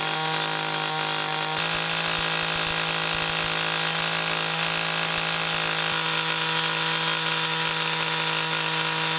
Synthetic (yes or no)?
no